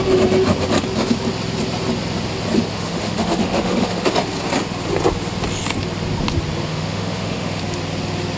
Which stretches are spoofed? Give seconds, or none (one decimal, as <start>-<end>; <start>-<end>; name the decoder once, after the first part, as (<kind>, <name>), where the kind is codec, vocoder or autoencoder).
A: 2.7-4.1 (autoencoder, DAC-VAE); 6.7-7.6

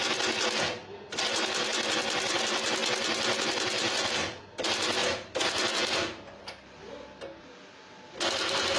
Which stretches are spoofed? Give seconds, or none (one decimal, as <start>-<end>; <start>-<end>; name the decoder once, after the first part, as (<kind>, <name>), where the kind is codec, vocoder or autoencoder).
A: none

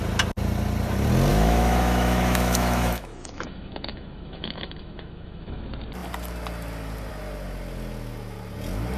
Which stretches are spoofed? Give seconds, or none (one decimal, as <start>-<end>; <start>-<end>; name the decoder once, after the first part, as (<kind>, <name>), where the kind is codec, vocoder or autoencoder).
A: 1.3-5.6 (autoencoder, DAC-VAE)